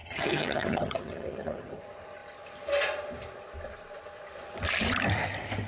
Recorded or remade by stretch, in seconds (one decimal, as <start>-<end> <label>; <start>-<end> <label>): 0.0-1.8 remade; 1.8-5.7 recorded

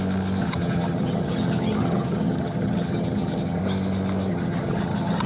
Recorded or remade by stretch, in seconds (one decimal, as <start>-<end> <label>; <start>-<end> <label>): 0.0-0.4 recorded; 0.4-3.6 remade; 3.6-4.3 recorded; 4.3-5.3 remade